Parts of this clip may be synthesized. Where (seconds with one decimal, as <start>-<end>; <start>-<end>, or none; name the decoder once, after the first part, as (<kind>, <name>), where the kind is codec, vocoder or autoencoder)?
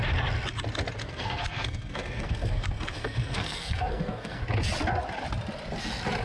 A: 1.0-4.4 (codec, SNAC)